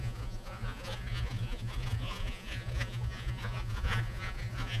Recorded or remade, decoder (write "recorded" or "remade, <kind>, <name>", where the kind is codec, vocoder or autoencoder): remade, vocoder, Vocos